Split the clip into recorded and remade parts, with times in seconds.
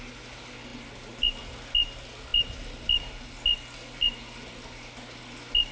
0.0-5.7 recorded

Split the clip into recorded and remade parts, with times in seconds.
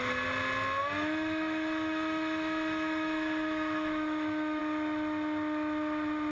0.0-0.8 recorded; 0.8-4.6 remade; 4.6-6.3 recorded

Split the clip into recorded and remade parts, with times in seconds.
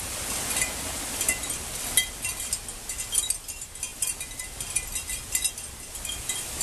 0.0-3.9 recorded; 3.9-4.4 remade; 4.4-6.6 recorded